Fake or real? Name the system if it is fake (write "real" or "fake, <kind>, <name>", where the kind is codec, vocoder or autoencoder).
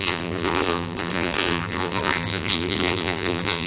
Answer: fake, vocoder, BigVGAN v2